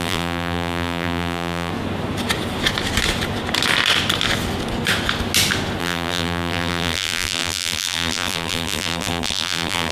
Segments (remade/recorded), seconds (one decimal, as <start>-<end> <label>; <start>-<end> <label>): 0.0-1.7 remade; 1.7-5.8 recorded; 5.8-9.9 remade

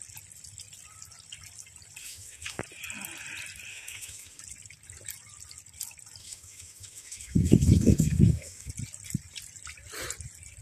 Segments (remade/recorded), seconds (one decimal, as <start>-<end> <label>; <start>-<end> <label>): 0.0-2.0 recorded; 2.0-2.6 remade; 2.6-3.7 recorded; 3.7-4.4 remade; 4.4-6.2 recorded; 6.2-8.7 remade; 8.7-10.6 recorded

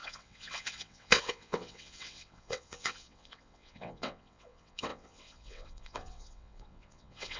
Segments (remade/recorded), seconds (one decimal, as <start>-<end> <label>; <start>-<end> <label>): 0.0-7.4 remade

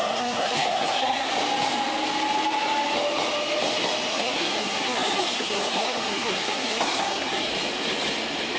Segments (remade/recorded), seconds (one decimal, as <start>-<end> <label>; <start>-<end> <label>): 0.0-1.3 remade; 1.3-4.1 recorded; 4.1-7.5 remade; 7.5-8.6 recorded

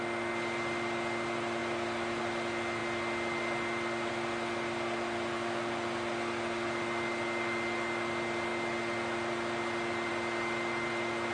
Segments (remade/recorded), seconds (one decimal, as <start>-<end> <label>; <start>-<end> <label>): 0.0-11.3 recorded